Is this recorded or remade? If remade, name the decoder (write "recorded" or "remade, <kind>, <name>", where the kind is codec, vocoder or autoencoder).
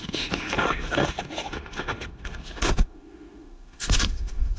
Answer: remade, autoencoder, DAC-VAE